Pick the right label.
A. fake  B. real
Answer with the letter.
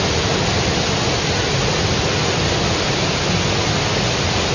B